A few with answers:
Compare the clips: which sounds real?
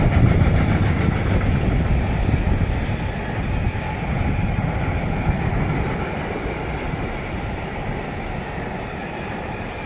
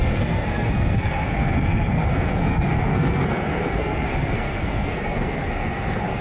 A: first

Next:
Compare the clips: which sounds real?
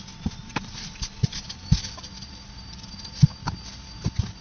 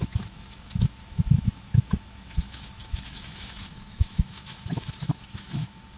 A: first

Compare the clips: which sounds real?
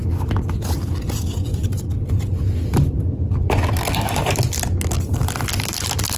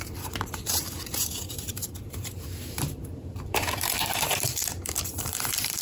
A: first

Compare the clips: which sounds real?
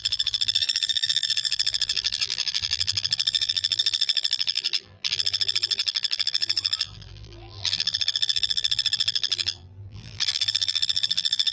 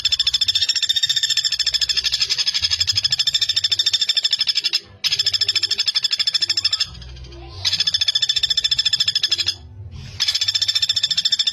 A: second